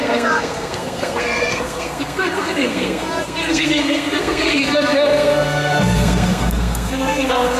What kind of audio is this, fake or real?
fake